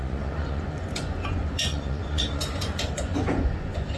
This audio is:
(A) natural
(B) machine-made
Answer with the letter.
B